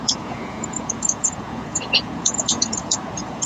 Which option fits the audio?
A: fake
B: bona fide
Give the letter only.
A